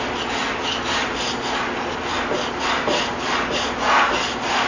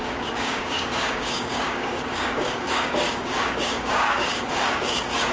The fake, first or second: second